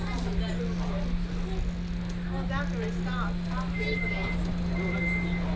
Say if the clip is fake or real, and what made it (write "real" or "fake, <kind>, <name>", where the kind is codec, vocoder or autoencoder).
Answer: real